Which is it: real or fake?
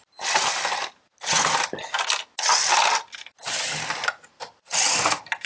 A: real